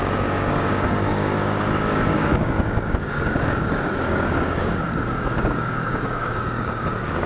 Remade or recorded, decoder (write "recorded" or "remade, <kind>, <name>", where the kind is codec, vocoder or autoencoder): remade, codec, DAC